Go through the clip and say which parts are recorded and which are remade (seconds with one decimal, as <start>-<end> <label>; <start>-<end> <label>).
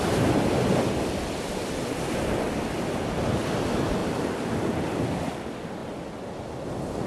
0.0-4.0 recorded; 4.0-4.5 remade; 4.5-7.1 recorded